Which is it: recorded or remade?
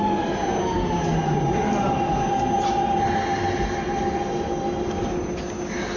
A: recorded